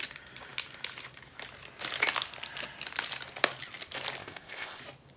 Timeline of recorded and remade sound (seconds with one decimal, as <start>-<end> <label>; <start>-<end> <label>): 0.0-4.2 recorded; 4.2-4.8 remade; 4.8-5.2 recorded